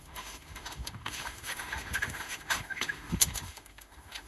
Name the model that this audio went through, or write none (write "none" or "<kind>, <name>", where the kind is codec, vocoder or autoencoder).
autoencoder, DAC-VAE